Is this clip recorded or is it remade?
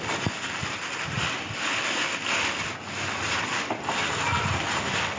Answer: recorded